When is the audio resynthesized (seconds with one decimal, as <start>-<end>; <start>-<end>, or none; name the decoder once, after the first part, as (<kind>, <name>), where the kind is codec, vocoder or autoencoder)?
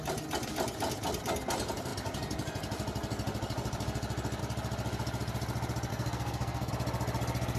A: 5.9-6.7 (codec, SNAC)